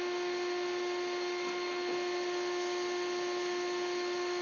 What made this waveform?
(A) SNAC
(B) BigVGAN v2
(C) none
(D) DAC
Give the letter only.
C